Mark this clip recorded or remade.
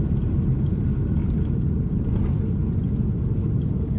recorded